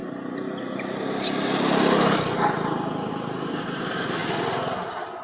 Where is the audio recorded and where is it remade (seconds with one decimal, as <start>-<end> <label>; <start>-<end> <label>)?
0.0-3.1 recorded; 3.1-4.2 remade; 4.2-5.2 recorded

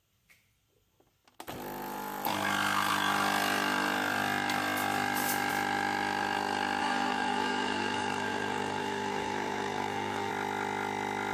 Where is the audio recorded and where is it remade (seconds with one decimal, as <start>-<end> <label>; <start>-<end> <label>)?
0.0-6.8 recorded; 6.8-10.3 remade; 10.3-11.3 recorded

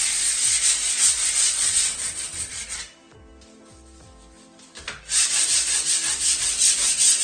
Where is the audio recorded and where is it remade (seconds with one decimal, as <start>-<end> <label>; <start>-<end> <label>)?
0.0-1.4 recorded; 1.4-2.5 remade; 2.5-7.2 recorded

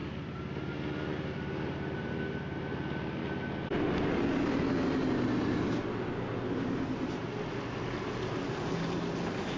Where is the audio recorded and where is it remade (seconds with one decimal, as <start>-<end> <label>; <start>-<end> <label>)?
0.0-9.6 recorded

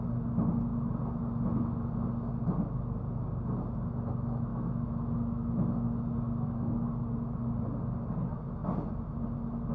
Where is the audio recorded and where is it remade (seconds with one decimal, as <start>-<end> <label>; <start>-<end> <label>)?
0.0-4.5 recorded; 4.5-6.7 remade; 6.7-9.7 recorded

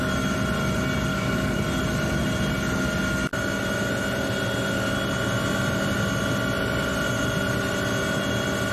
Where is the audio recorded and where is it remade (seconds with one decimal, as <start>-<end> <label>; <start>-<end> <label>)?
0.0-1.1 recorded; 1.1-1.6 remade; 1.6-8.7 recorded